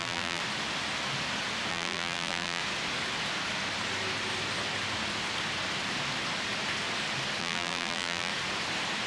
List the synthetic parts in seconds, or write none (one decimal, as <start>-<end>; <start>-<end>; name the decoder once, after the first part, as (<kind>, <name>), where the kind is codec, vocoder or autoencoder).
0.0-0.4 (vocoder, BigVGAN v2); 1.7-2.6; 7.4-8.3